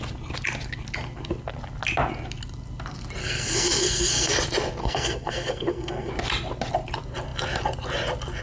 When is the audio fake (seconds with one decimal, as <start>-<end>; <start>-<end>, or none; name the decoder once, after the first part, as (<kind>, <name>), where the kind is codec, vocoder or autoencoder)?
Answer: 3.2-4.3 (codec, SNAC); 4.8-6.1